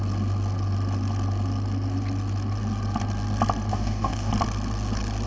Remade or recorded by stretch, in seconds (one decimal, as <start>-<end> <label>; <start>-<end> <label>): 0.0-3.7 recorded; 3.7-4.3 remade; 4.3-5.3 recorded